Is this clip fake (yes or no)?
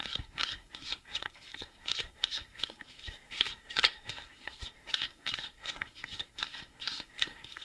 yes